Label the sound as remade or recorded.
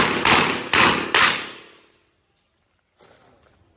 recorded